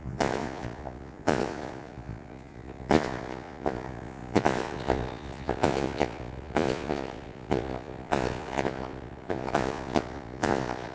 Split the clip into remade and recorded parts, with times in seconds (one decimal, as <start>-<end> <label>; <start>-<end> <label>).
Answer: 0.0-10.9 remade